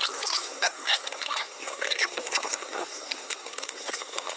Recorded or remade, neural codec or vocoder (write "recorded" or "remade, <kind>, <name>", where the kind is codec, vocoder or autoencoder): remade, codec, SNAC